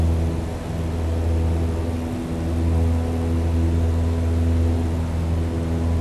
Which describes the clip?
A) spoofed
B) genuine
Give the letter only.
B